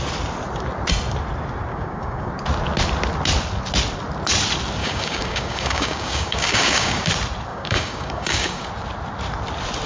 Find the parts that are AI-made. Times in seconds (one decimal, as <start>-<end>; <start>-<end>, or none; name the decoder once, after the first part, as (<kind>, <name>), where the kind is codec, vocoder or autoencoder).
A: 1.7-2.3 (codec, DAC); 4.8-7.1; 7.5-8.7